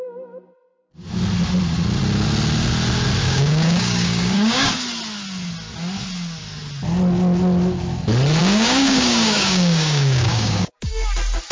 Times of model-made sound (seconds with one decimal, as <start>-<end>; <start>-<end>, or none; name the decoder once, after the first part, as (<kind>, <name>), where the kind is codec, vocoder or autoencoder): 3.2-4.7 (codec, DAC); 8.4-10.9